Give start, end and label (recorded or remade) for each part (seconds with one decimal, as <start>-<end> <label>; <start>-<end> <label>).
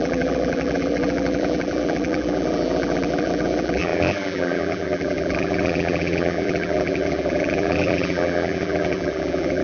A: 0.0-9.6 remade